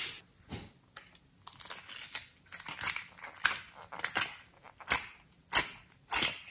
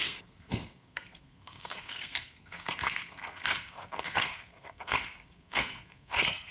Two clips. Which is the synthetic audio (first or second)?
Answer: second